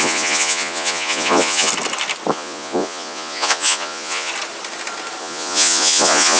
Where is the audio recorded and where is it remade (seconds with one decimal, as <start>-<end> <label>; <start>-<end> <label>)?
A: 0.0-1.7 remade; 1.7-2.3 recorded; 2.3-4.3 remade; 4.3-5.2 recorded; 5.2-6.4 remade

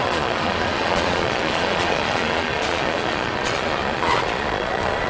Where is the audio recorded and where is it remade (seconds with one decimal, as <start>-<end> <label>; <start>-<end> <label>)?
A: 0.0-5.1 remade